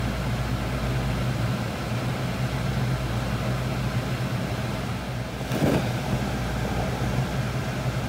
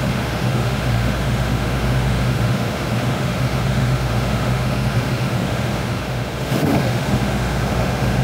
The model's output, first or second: second